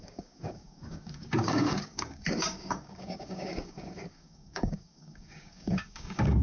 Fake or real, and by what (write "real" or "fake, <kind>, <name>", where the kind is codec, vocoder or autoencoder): fake, codec, DAC